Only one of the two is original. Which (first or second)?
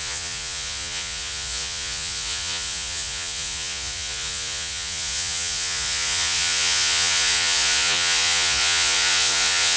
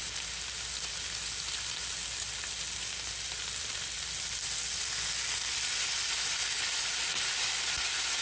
second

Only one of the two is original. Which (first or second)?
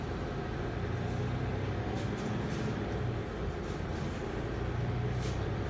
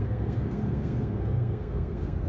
first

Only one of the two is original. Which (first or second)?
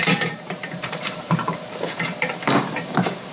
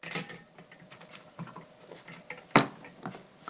second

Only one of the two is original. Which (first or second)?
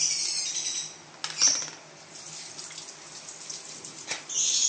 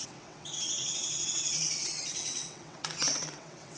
first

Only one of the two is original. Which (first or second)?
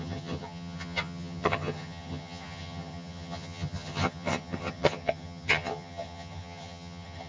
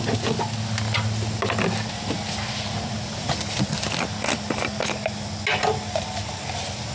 second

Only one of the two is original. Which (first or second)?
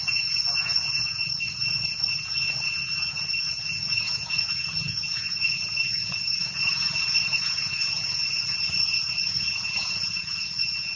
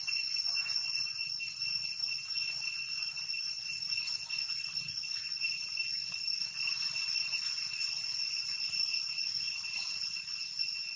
second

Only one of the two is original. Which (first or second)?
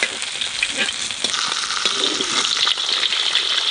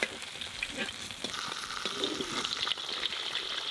first